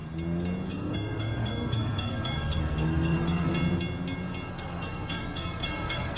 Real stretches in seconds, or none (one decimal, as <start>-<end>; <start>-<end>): 0.0-0.7; 3.5-4.5